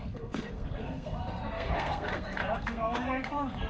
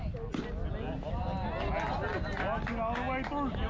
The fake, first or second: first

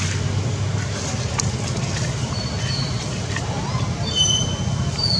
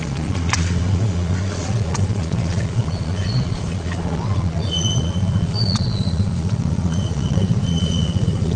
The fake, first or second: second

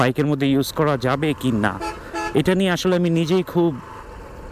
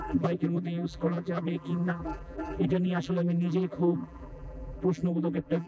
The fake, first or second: second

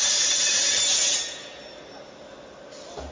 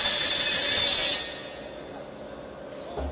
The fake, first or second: first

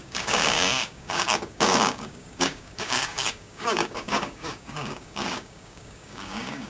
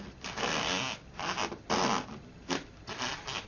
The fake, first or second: first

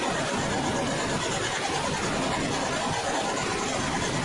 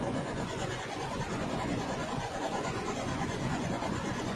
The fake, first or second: second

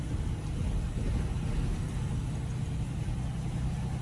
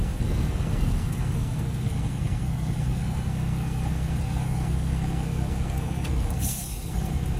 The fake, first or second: second